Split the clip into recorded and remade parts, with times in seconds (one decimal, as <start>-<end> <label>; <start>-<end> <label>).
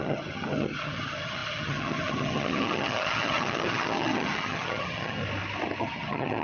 0.0-5.2 remade; 5.2-5.8 recorded; 5.8-6.4 remade